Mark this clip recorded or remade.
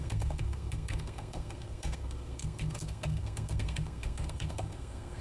remade